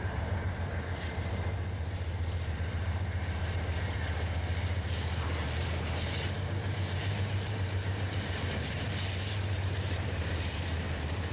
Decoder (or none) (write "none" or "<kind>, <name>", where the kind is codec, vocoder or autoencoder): vocoder, BigVGAN v2